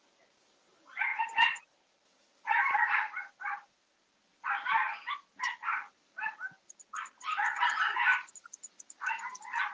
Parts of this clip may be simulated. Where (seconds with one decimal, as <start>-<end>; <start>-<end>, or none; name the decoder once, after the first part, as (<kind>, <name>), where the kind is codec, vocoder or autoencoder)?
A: 1.1-1.6 (vocoder, Vocos)